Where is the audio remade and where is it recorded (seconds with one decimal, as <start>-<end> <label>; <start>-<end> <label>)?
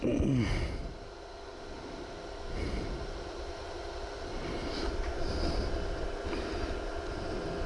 0.0-7.7 recorded